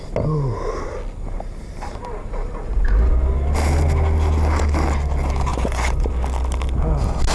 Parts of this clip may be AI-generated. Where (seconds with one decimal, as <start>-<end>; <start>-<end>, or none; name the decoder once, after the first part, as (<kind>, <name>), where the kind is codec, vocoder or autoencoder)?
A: 5.5-6.1 (vocoder, Vocos)